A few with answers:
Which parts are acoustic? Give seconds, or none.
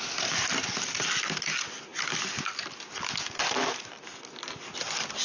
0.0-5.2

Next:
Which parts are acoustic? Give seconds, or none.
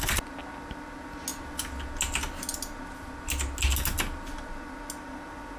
0.0-5.6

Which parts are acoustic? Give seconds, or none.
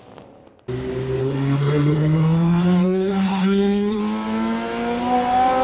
0.0-1.2; 4.0-5.6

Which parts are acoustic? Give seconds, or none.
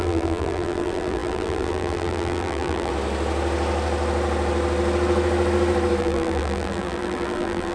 2.9-6.0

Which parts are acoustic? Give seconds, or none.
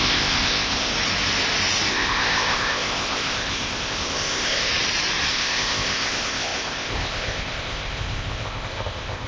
0.9-1.9; 4.7-5.3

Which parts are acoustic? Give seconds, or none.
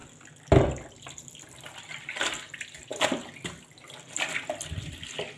0.0-5.4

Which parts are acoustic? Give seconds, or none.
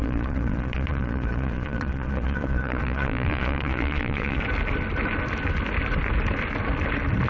4.4-7.3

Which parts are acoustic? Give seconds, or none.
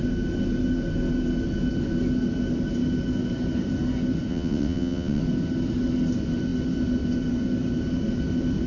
0.0-4.3; 5.2-8.7